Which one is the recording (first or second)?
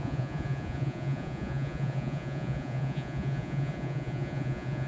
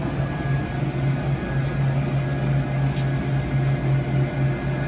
second